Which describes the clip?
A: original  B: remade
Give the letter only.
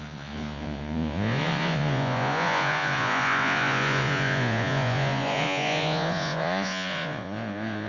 B